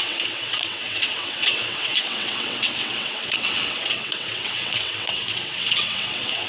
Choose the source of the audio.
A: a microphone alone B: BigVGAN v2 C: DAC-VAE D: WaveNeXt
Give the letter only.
D